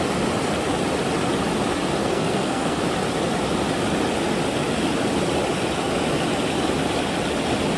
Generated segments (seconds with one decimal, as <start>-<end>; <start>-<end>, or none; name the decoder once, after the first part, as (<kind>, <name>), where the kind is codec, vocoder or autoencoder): 2.0-2.8 (codec, SNAC)